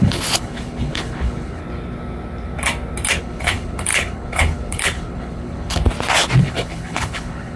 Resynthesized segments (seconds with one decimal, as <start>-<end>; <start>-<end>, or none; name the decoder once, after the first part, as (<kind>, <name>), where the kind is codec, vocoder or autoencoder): 0.0-1.6 (codec, HILCodec); 3.2-5.8; 6.4-7.6